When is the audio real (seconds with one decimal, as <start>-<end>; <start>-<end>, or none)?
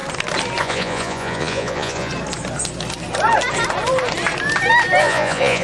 0.0-0.6; 2.1-5.0